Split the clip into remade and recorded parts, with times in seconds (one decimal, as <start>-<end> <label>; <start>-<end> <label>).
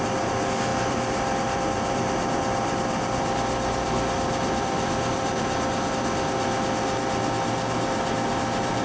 0.0-0.7 recorded; 0.7-5.9 remade; 5.9-8.8 recorded